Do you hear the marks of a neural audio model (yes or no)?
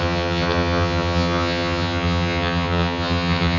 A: yes